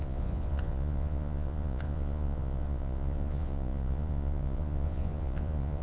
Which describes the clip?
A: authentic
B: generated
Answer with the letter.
B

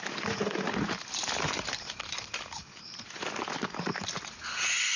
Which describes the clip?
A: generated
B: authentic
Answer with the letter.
B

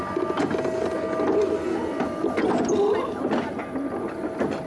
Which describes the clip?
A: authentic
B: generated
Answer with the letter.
A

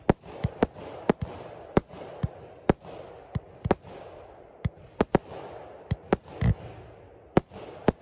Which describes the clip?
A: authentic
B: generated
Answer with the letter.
A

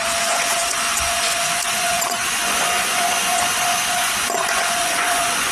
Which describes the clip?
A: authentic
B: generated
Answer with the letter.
B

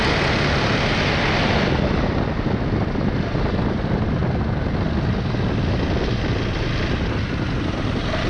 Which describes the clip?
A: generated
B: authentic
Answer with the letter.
B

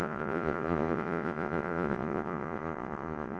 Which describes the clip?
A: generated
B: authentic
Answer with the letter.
A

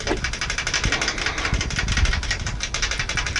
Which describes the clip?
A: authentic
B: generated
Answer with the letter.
A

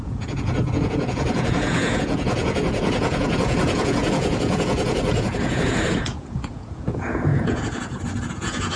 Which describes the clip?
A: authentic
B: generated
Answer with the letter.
B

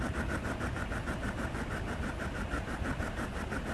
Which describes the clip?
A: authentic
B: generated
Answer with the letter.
A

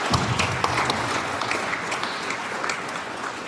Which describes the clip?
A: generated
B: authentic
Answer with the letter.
A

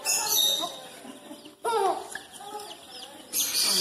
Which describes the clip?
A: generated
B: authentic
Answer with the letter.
B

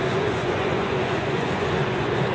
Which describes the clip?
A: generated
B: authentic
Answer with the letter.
A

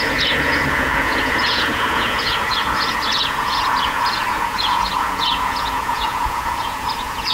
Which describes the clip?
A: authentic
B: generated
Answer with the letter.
B